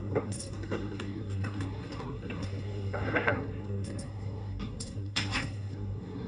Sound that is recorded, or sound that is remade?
remade